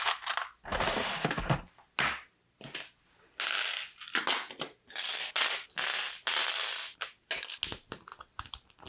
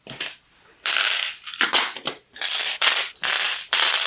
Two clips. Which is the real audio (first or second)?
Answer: first